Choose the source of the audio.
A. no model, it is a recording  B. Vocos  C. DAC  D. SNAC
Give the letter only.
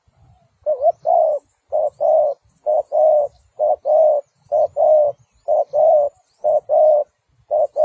A